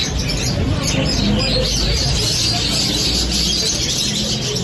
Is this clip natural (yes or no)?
yes